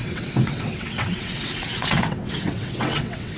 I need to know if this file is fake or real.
fake